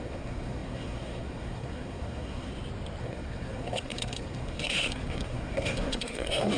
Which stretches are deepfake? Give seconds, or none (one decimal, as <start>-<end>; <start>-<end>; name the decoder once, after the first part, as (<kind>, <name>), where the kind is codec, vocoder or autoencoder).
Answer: 0.0-2.5 (codec, SNAC); 3.0-6.6